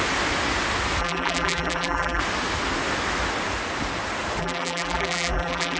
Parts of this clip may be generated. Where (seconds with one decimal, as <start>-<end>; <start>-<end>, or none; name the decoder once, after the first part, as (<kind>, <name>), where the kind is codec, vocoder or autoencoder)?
1.0-2.2 (vocoder, BigVGAN v2); 4.4-5.8